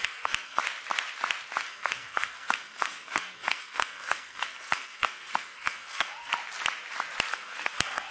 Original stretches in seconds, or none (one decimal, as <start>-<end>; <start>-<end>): 0.6-1.6; 6.3-7.3